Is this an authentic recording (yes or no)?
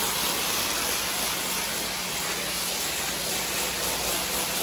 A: yes